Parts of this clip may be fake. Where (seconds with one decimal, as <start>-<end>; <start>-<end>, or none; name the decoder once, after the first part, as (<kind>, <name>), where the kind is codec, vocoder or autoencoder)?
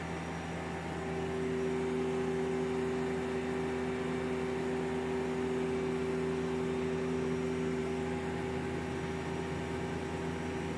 none